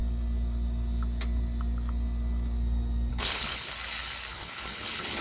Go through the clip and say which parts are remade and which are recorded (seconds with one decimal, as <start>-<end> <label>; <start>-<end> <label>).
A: 0.0-3.1 recorded; 3.1-3.7 remade; 3.7-4.3 recorded; 4.3-5.2 remade